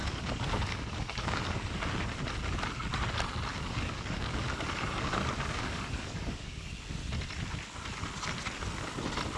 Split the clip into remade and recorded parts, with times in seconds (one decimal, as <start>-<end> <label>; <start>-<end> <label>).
0.0-1.8 remade; 1.8-3.5 recorded; 3.5-6.7 remade; 6.7-9.4 recorded